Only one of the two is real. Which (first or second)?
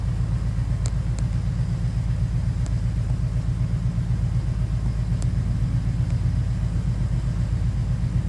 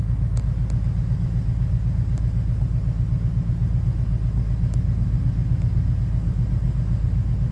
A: first